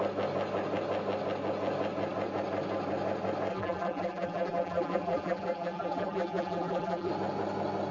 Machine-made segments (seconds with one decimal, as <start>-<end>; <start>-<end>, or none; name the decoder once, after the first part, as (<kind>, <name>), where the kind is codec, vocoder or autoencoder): 3.5-7.1 (vocoder, BigVGAN v2)